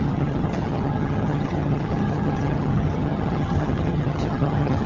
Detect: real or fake fake